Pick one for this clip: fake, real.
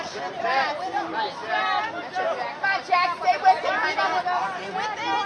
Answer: real